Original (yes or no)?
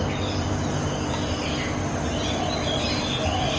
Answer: yes